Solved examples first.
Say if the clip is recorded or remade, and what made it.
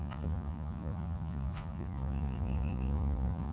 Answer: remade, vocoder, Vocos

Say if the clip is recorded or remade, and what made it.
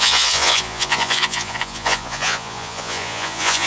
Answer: remade, vocoder, Vocos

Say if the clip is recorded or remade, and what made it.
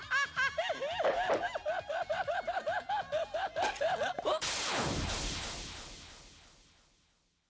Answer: recorded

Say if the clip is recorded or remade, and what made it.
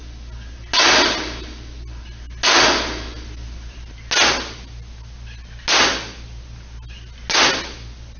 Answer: recorded